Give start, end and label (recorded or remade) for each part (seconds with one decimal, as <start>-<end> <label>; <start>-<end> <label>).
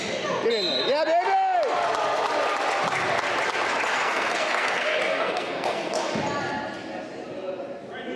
0.0-3.9 recorded; 3.9-6.1 remade; 6.1-8.2 recorded